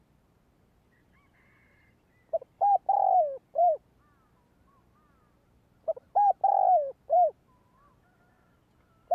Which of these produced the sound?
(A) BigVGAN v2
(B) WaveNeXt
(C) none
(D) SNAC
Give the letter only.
C